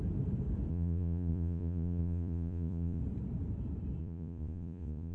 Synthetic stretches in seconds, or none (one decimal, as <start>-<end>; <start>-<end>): 0.7-3.0; 4.0-5.1